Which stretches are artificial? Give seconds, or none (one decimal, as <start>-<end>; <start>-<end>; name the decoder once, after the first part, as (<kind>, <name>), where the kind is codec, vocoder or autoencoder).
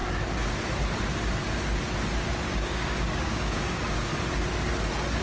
2.5-4.1 (codec, DAC)